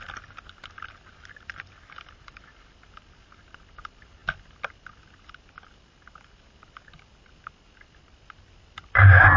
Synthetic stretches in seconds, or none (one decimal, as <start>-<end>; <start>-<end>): none